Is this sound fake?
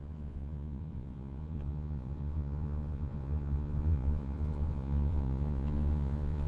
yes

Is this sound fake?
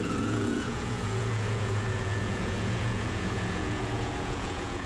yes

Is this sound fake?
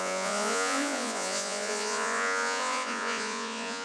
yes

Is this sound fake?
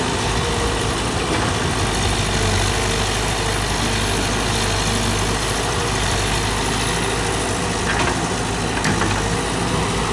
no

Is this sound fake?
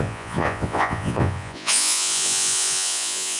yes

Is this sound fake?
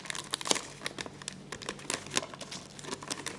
no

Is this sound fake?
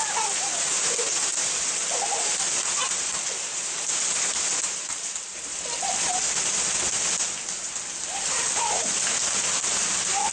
no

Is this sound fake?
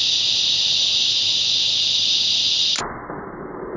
no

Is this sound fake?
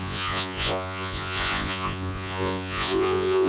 yes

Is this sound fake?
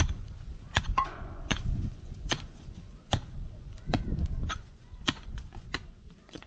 yes